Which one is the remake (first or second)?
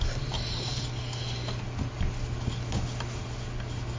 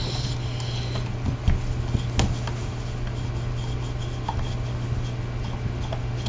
first